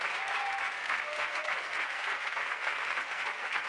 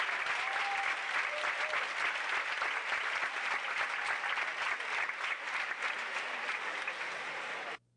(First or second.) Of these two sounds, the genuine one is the second